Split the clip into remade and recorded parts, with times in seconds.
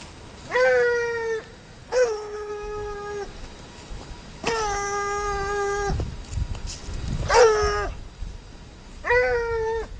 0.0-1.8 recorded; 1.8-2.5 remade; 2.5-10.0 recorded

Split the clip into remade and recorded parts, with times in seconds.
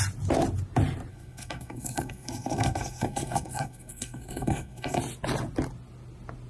0.0-1.1 recorded; 1.1-5.0 remade; 5.0-6.5 recorded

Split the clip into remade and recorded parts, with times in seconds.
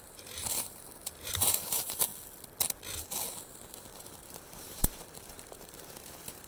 0.0-2.1 remade; 2.1-3.3 recorded; 3.3-6.5 remade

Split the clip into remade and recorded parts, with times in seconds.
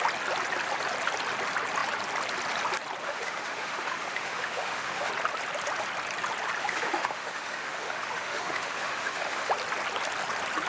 0.0-3.0 recorded; 3.0-5.1 remade; 5.1-6.6 recorded; 6.6-9.5 remade; 9.5-10.7 recorded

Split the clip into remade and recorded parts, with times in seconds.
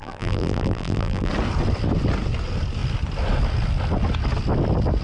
0.0-1.3 remade; 1.3-5.0 recorded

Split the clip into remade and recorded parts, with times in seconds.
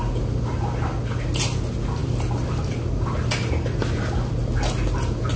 0.0-5.4 recorded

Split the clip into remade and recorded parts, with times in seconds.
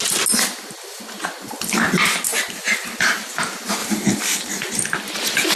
0.0-2.3 recorded; 2.3-3.2 remade; 3.2-3.8 recorded; 3.8-4.8 remade; 4.8-5.6 recorded